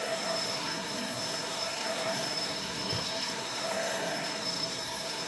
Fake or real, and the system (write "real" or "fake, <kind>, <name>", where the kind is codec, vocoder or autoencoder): fake, codec, SNAC